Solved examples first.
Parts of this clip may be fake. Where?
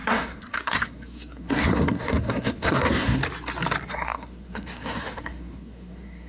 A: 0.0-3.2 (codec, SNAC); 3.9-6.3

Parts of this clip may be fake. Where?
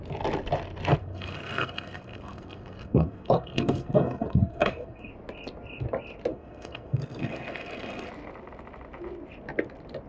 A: 1.0-5.1 (codec, SNAC); 6.3-8.1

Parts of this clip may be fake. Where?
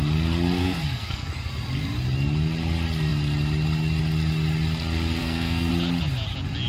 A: 0.6-1.3 (codec, SNAC); 5.2-5.7